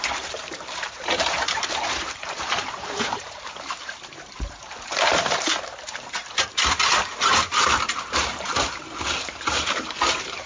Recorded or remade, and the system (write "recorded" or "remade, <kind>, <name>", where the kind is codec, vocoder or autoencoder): remade, vocoder, BigVGAN v2